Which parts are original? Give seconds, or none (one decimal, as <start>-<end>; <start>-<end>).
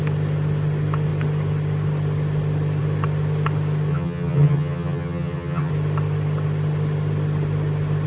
0.0-3.9; 5.7-8.1